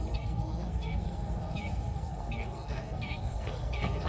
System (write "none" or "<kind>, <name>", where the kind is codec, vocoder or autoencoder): codec, SNAC